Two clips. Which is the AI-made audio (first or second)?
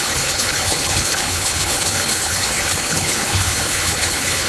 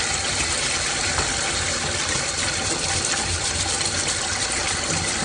first